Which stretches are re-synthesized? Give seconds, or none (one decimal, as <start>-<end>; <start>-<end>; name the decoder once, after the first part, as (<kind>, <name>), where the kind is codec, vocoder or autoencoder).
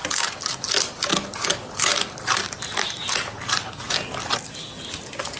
none